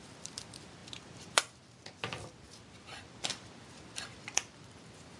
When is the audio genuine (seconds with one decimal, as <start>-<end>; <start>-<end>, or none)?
none